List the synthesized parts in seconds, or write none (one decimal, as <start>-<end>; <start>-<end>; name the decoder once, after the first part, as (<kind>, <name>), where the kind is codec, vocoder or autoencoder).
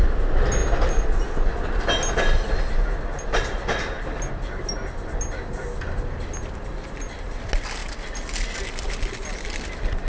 none